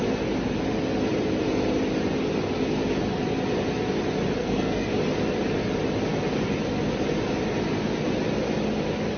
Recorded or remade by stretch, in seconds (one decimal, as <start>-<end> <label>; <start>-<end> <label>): 0.0-4.4 recorded; 4.4-4.9 remade; 4.9-9.2 recorded